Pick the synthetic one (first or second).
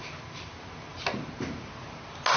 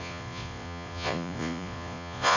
second